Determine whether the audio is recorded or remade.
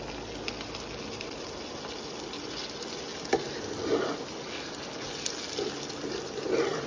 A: recorded